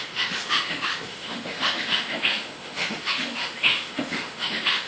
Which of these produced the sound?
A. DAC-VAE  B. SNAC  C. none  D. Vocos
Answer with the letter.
A